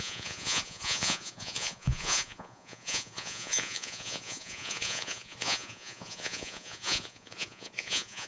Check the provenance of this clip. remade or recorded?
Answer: remade